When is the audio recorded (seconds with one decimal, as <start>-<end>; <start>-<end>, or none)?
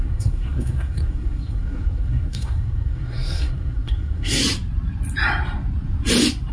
4.4-6.5